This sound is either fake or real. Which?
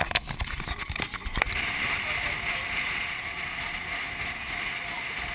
real